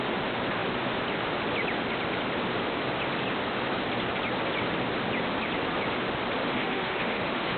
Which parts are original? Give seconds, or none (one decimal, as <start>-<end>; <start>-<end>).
0.0-6.4